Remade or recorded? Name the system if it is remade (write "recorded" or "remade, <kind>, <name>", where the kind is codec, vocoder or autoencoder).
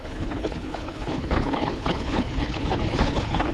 remade, codec, HILCodec